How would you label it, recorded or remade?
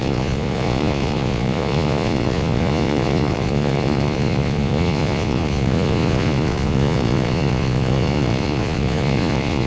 remade